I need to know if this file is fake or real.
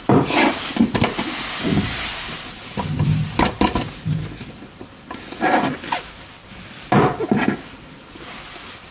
real